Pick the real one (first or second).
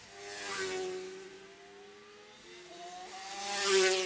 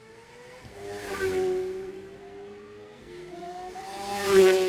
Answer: first